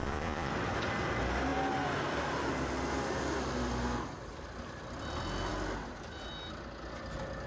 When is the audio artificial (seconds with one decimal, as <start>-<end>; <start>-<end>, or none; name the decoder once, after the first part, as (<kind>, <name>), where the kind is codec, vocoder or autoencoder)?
0.0-0.5 (vocoder, Vocos)